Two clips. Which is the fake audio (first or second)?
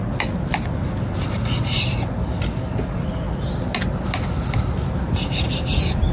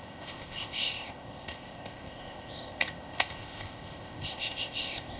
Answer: second